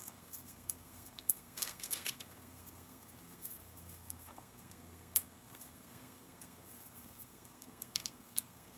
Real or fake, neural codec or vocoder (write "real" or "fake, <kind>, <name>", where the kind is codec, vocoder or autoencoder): fake, codec, SNAC